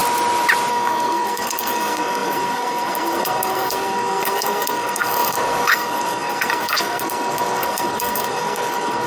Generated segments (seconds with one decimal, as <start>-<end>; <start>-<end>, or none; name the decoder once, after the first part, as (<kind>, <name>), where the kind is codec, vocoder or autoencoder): 0.7-9.1 (codec, SNAC)